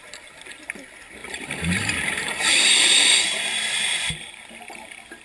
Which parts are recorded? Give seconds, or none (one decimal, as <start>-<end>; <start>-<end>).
0.0-1.2; 4.3-5.2